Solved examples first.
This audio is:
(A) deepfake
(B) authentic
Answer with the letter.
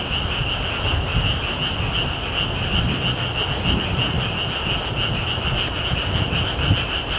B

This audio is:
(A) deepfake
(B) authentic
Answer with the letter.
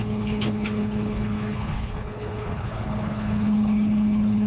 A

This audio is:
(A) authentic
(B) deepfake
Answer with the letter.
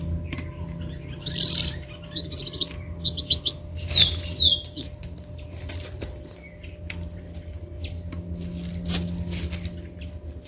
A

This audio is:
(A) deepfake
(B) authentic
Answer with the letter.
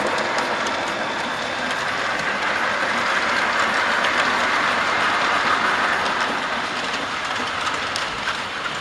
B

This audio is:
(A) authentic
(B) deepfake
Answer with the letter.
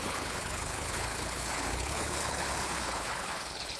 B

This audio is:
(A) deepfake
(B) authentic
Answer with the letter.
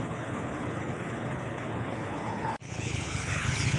A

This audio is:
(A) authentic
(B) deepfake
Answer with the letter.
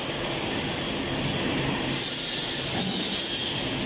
A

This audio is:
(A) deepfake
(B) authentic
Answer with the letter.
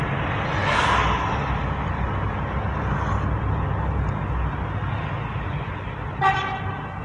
B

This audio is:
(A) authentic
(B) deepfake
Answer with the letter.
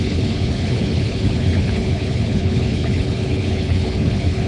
B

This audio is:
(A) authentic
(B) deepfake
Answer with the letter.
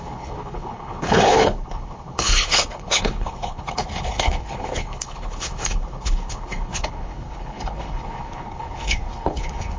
B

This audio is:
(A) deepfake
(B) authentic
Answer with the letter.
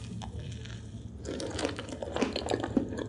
B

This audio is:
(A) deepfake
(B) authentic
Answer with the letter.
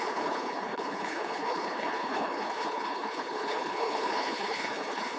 A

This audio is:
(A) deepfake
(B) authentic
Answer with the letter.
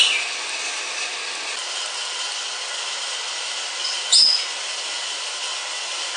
B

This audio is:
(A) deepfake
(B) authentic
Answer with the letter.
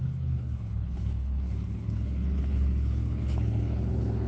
A